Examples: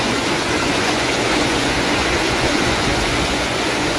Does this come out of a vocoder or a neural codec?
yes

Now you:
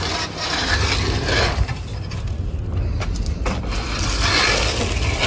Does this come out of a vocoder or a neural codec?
no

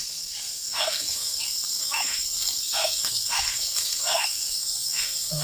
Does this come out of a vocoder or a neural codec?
yes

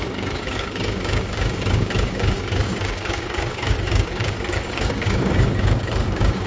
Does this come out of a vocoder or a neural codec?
yes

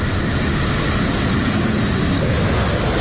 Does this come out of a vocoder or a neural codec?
no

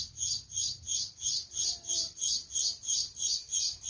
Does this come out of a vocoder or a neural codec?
yes